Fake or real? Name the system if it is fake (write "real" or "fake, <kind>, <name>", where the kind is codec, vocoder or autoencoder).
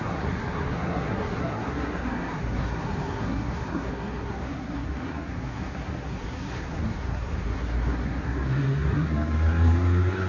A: fake, codec, SNAC